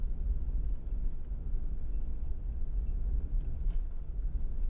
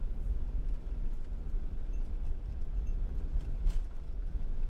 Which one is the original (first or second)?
first